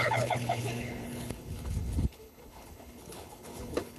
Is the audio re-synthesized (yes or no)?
yes